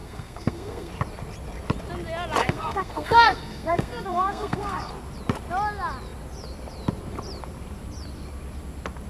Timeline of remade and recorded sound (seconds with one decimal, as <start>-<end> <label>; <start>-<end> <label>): 0.0-0.9 remade; 0.9-2.4 recorded; 2.4-4.9 remade; 4.9-9.1 recorded